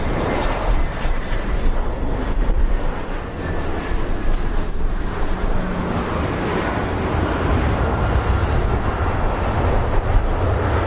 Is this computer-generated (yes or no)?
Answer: no